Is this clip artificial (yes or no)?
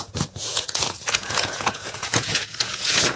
yes